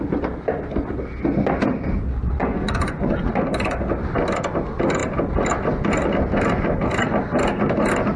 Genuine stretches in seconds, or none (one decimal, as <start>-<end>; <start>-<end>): 0.0-2.2; 3.3-8.2